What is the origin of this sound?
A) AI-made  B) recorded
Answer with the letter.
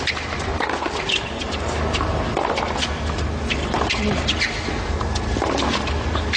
B